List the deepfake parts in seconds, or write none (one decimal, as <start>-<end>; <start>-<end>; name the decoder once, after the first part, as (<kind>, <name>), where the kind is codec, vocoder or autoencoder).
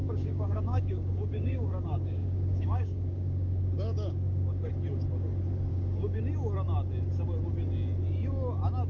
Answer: 0.0-4.7 (codec, DAC); 5.7-6.2